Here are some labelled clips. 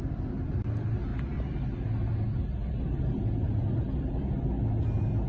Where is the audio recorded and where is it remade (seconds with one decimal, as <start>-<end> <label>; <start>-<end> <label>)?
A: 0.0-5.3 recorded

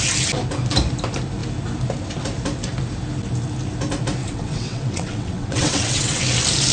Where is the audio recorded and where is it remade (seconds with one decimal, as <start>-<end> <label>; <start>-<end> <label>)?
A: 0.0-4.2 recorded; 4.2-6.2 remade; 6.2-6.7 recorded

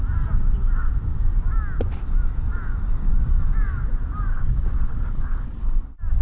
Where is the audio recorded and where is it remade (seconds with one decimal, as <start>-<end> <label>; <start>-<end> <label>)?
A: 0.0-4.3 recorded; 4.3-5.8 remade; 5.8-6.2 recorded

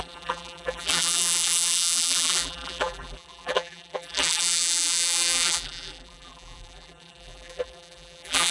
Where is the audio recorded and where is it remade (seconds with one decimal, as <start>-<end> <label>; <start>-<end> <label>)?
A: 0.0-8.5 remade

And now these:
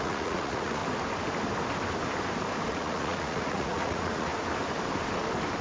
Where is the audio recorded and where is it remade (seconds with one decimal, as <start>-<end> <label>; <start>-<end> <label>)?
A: 0.0-0.8 remade; 0.8-2.7 recorded; 2.7-4.3 remade; 4.3-5.6 recorded

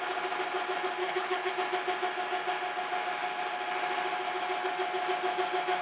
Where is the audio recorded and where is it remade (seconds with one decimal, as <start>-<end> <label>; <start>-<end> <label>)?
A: 0.0-1.0 recorded; 1.0-1.5 remade; 1.5-5.8 recorded